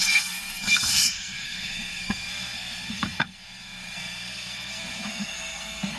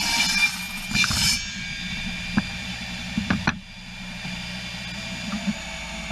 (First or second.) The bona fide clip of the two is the second